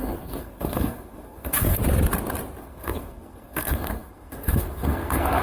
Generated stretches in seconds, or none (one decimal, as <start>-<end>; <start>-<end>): 0.0-1.8; 2.6-5.4